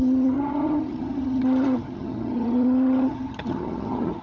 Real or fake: fake